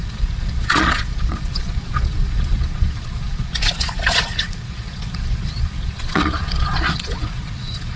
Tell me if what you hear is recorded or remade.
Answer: remade